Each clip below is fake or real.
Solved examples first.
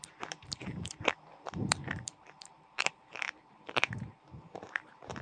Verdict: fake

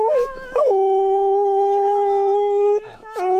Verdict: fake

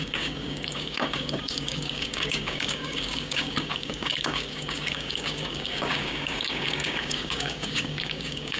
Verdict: fake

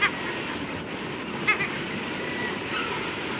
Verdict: real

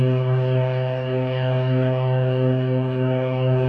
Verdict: fake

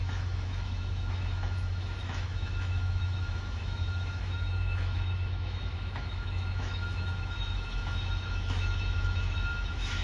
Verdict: fake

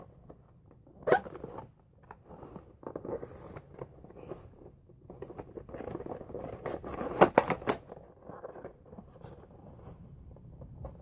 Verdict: real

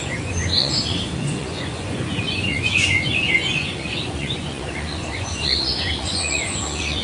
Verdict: fake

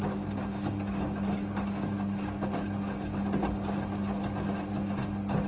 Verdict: real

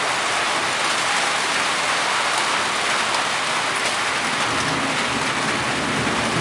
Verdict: real